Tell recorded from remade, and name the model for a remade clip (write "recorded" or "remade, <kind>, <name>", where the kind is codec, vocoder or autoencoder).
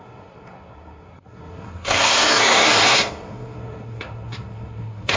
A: remade, codec, SNAC